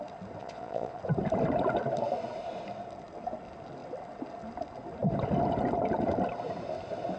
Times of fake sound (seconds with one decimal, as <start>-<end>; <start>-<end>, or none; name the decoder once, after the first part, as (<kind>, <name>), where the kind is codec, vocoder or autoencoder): 0.4-1.0 (vocoder, Vocos)